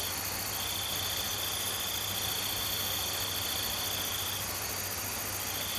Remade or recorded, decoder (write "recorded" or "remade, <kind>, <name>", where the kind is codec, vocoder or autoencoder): recorded